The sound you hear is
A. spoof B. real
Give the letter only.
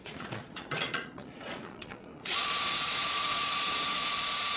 A